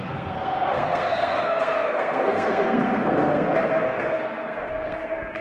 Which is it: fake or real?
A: fake